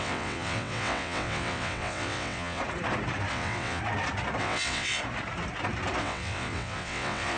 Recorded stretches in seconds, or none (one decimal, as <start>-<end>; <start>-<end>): 2.6-3.3; 3.8-4.4; 5.0-6.0